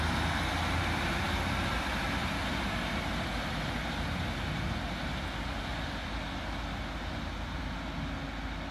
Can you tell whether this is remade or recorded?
recorded